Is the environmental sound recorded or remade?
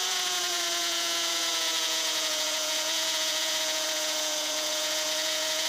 remade